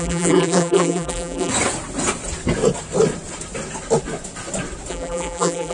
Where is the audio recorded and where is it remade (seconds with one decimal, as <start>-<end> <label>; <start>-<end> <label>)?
0.0-1.5 remade; 1.5-4.9 recorded; 4.9-5.7 remade